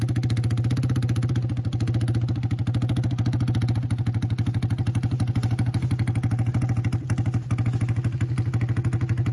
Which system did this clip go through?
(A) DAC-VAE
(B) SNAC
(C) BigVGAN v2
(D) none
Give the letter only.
D